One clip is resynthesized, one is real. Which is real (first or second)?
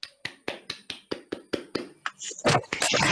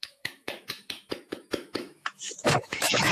first